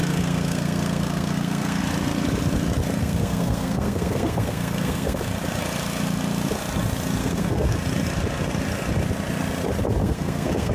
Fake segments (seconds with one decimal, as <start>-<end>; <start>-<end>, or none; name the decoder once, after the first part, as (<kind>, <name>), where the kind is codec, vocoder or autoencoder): 0.0-1.8 (codec, SNAC); 3.0-5.2; 7.2-7.8; 10.0-10.7